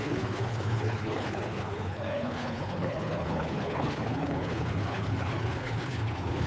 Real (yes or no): no